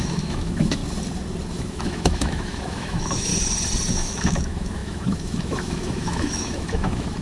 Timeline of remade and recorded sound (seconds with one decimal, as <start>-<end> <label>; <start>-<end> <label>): 0.0-0.8 remade; 0.8-1.5 recorded; 1.5-3.3 remade; 3.3-3.9 recorded; 3.9-7.2 remade